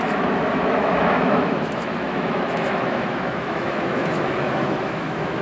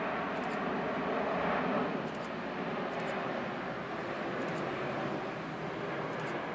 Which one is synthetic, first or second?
first